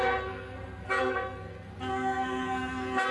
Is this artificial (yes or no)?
yes